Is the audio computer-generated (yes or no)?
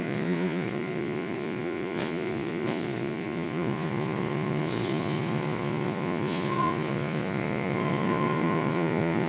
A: yes